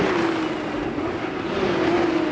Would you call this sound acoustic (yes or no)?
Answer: yes